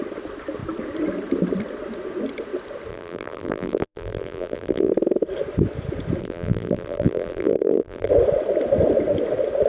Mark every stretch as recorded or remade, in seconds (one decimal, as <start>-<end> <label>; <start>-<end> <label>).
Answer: 0.0-2.9 recorded; 2.9-4.9 remade; 4.9-6.2 recorded; 6.2-8.1 remade; 8.1-9.7 recorded